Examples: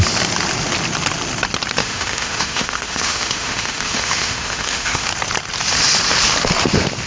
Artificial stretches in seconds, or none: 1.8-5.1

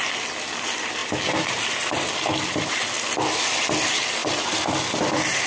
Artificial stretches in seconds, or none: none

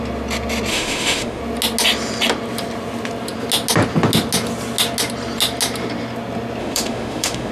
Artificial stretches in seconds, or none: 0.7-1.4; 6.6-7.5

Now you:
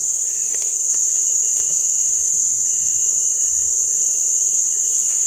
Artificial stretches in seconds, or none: 0.0-3.2; 4.5-5.3

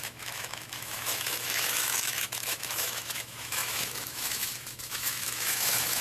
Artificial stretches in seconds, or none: 0.0-6.0

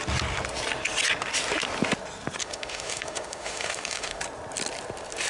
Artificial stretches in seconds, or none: 2.4-4.2

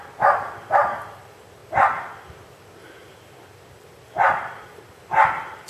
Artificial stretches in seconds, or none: none

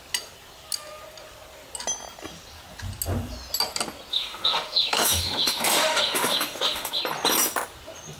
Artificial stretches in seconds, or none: 4.1-7.0